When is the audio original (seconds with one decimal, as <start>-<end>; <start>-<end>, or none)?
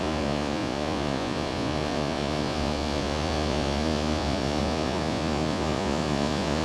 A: none